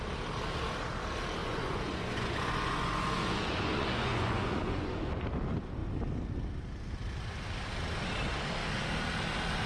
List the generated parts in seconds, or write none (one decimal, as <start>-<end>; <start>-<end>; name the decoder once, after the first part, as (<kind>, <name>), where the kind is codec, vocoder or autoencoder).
1.4-5.1 (vocoder, Vocos)